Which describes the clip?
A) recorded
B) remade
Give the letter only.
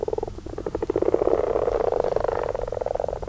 A